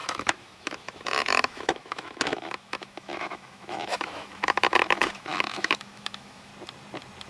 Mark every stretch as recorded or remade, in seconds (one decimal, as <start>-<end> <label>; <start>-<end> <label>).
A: 0.0-6.5 remade; 6.5-7.3 recorded